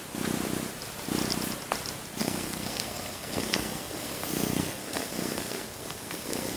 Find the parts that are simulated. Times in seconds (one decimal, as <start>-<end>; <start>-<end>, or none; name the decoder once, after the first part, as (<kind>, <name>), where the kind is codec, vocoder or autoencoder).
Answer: 2.2-6.6 (codec, SNAC)